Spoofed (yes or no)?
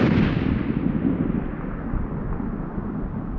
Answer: no